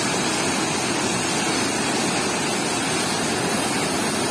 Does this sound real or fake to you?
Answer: real